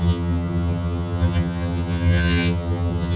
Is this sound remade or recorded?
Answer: remade